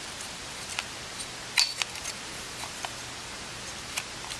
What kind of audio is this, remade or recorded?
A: recorded